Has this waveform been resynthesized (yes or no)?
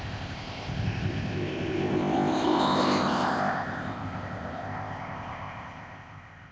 yes